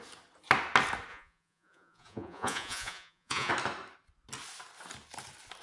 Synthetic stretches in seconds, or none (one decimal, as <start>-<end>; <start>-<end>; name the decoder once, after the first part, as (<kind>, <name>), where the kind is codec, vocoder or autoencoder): 1.1-3.5 (vocoder, Vocos)